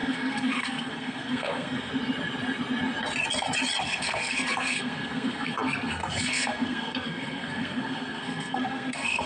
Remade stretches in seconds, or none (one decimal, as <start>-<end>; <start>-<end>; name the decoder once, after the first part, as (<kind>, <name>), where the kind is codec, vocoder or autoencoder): 0.0-1.9 (codec, SNAC); 3.8-9.3